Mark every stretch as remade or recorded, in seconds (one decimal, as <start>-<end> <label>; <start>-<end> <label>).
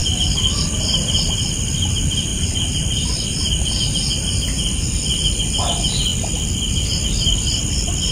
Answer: 0.0-0.7 remade; 0.7-2.3 recorded; 2.3-5.0 remade; 5.0-8.1 recorded